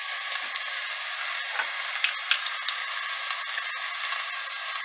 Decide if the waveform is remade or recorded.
recorded